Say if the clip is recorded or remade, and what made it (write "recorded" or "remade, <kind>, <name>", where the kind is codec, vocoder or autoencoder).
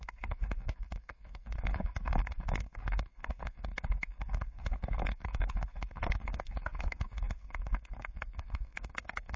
remade, codec, SNAC